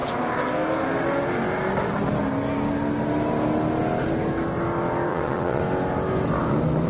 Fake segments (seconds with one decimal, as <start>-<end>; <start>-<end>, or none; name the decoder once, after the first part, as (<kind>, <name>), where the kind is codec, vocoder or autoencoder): 5.1-5.6 (vocoder, WaveNeXt)